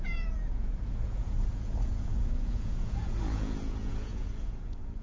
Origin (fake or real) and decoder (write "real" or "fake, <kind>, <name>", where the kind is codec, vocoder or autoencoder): fake, vocoder, Vocos